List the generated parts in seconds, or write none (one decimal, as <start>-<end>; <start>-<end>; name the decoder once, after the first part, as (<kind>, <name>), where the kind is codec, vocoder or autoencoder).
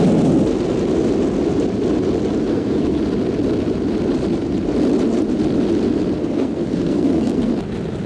2.5-3.0 (codec, SNAC); 6.2-7.5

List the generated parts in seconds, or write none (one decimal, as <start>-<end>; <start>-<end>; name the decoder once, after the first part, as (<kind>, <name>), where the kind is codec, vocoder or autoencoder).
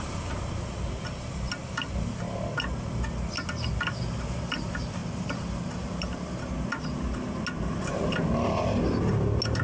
none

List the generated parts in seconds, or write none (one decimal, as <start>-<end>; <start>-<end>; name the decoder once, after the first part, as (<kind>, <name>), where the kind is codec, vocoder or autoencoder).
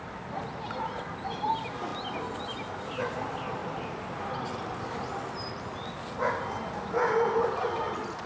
none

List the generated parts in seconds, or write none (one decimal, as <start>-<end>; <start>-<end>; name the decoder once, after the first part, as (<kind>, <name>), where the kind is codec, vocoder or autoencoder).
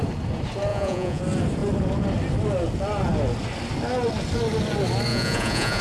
0.7-1.2 (vocoder, Vocos); 5.1-5.8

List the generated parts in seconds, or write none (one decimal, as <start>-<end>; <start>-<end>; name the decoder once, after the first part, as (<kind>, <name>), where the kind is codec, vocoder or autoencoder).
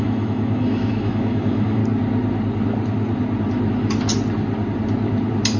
0.0-1.8 (autoencoder, DAC-VAE)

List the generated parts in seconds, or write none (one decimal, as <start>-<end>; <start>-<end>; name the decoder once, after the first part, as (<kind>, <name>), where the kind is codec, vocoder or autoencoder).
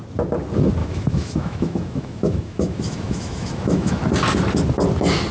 0.8-4.0 (autoencoder, DAC-VAE)